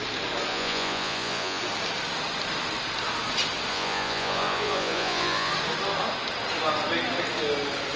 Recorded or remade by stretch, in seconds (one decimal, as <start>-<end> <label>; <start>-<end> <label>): 0.0-0.5 recorded; 0.5-1.6 remade; 1.6-3.7 recorded; 3.7-5.5 remade; 5.5-8.0 recorded